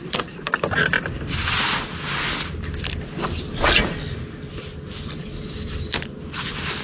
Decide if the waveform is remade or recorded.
recorded